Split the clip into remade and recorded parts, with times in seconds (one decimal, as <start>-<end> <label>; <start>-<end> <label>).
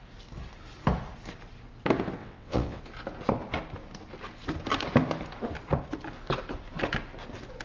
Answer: 0.0-2.2 recorded; 2.2-2.8 remade; 2.8-7.6 recorded